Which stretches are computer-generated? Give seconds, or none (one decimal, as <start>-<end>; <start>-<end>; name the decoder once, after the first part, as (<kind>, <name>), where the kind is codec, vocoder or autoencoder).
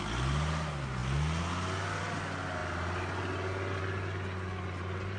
none